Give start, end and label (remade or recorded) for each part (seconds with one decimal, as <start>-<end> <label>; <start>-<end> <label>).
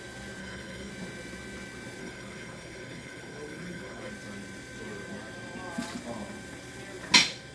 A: 0.0-0.4 recorded; 0.4-0.9 remade; 0.9-2.0 recorded; 2.0-4.1 remade; 4.1-7.5 recorded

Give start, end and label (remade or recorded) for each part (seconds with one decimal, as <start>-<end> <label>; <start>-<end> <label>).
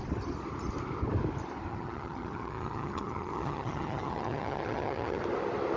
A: 0.0-1.7 recorded; 1.7-5.2 remade; 5.2-5.8 recorded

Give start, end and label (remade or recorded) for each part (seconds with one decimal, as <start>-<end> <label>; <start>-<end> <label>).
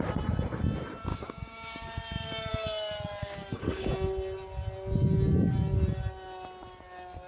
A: 0.0-1.1 recorded; 1.1-2.5 remade; 2.5-3.2 recorded; 3.2-3.9 remade; 3.9-7.3 recorded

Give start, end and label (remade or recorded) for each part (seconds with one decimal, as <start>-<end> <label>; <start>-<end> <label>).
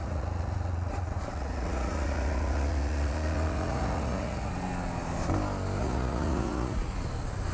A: 0.0-4.5 remade; 4.5-5.8 recorded; 5.8-6.9 remade; 6.9-7.5 recorded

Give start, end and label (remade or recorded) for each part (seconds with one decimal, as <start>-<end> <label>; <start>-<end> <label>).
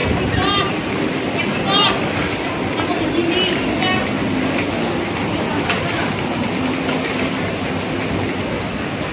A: 0.0-9.1 recorded